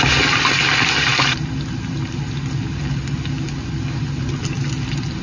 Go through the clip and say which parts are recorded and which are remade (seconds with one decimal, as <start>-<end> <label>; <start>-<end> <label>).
0.0-5.2 recorded